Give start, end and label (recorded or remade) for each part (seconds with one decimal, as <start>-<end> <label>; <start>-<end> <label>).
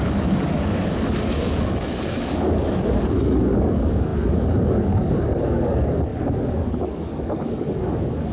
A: 0.0-8.3 remade